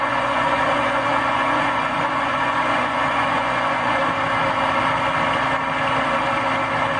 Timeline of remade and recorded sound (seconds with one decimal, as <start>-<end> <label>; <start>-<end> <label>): 0.0-4.0 remade; 4.0-7.0 recorded